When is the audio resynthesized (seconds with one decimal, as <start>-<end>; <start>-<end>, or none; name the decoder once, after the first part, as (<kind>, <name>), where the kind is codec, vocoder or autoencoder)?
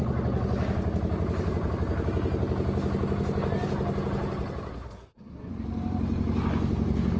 4.7-5.5 (codec, SNAC)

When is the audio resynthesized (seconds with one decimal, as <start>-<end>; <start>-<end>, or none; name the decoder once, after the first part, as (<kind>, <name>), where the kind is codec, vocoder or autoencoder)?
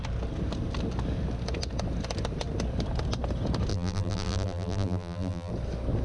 3.7-5.5 (vocoder, BigVGAN v2)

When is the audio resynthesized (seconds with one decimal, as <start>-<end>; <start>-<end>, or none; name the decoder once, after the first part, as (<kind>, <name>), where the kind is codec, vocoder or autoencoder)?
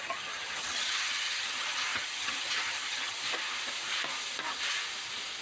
0.0-3.2 (vocoder, HiFi-GAN)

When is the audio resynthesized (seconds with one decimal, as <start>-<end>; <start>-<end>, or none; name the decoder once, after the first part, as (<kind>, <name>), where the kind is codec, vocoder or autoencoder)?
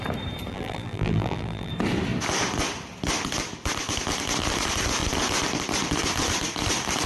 0.5-1.7 (vocoder, BigVGAN v2)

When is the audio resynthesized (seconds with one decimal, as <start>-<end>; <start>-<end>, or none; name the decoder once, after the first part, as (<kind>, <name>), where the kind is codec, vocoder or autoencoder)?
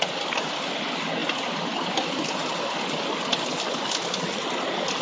none